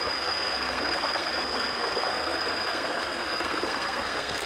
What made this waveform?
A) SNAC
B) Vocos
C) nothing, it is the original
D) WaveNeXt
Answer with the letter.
A